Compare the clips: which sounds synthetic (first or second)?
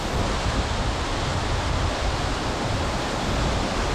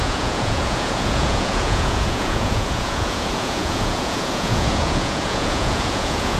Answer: second